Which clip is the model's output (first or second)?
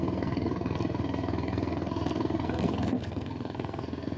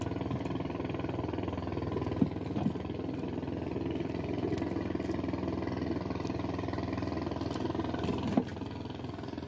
first